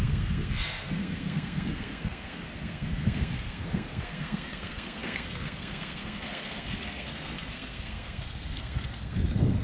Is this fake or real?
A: fake